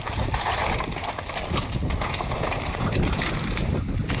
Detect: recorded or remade recorded